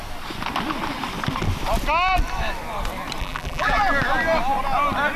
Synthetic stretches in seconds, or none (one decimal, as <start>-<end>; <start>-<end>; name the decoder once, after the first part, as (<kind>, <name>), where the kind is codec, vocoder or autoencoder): 3.2-3.8 (vocoder, BigVGAN v2)